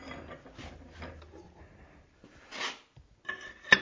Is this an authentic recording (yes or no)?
yes